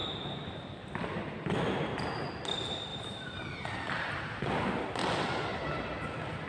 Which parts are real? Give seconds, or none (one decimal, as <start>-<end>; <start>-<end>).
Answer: 0.9-2.9; 4.1-6.5